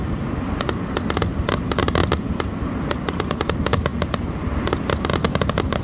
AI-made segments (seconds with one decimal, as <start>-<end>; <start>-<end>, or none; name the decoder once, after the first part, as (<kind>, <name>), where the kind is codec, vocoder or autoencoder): none